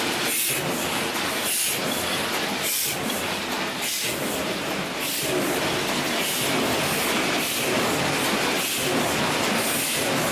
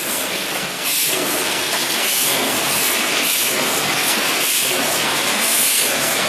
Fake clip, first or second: second